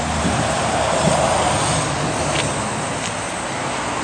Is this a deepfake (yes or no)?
no